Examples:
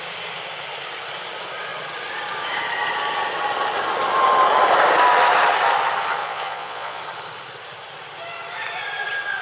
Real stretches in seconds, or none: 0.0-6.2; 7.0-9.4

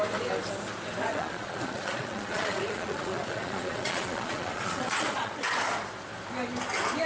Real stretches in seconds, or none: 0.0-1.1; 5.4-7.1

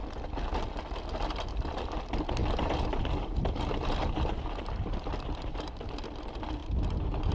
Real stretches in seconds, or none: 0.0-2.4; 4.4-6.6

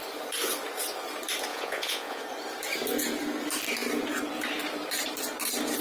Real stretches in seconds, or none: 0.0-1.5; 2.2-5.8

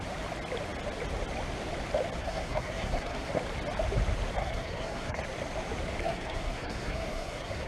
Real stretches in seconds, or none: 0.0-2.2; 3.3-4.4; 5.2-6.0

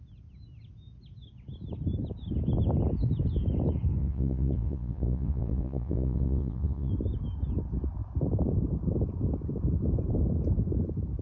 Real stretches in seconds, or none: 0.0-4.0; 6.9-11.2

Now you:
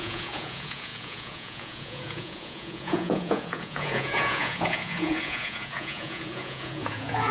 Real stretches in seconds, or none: none